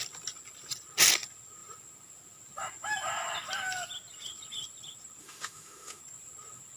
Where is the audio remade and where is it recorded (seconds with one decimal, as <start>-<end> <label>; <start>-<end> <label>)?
0.0-5.2 recorded; 5.2-6.0 remade; 6.0-6.8 recorded

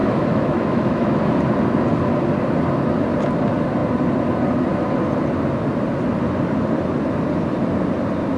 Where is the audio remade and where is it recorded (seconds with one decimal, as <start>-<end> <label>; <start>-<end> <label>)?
0.0-1.2 remade; 1.2-8.4 recorded